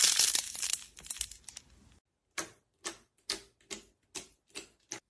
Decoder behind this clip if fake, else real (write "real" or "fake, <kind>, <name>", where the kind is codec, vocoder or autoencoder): real